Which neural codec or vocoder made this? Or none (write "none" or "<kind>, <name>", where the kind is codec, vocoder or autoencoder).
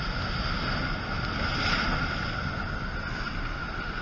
none